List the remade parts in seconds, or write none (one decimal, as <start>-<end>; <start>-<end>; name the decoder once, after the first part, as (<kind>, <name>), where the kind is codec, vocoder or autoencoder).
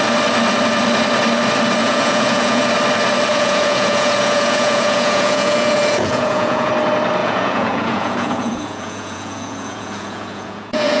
1.8-2.6 (vocoder, Vocos); 3.3-6.7; 7.2-11.0